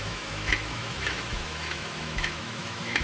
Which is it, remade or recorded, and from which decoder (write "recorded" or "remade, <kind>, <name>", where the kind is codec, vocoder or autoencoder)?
remade, autoencoder, DAC-VAE